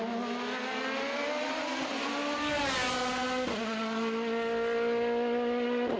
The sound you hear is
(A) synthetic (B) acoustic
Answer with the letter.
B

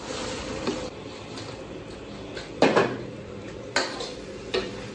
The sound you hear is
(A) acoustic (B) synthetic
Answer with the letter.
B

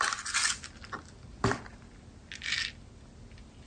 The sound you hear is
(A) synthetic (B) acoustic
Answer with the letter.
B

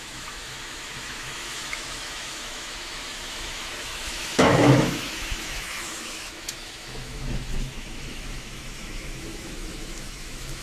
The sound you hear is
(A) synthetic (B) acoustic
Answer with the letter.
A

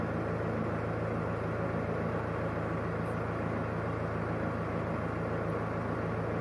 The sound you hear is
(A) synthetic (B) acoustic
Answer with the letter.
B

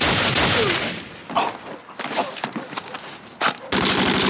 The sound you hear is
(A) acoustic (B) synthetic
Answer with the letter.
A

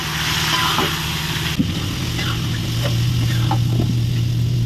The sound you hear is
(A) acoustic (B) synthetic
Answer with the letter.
A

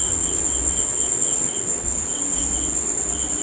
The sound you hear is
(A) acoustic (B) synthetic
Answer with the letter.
B